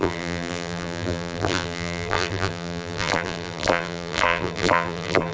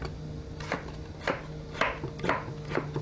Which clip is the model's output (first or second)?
first